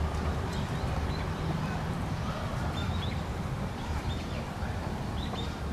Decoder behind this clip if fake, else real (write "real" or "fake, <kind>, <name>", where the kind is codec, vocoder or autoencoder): fake, vocoder, BigVGAN v2